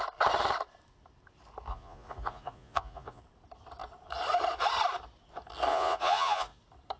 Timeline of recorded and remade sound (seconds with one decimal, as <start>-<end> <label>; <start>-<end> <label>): 0.0-1.7 recorded; 1.7-3.2 remade; 3.2-5.7 recorded; 5.7-6.6 remade; 6.6-7.0 recorded